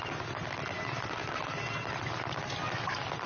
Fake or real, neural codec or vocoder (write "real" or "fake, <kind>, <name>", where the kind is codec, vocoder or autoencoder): real